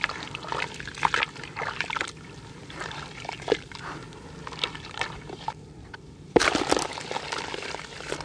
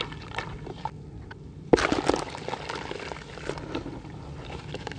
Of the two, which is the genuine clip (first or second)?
second